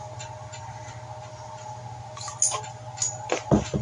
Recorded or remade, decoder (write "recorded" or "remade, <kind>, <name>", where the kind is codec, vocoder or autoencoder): recorded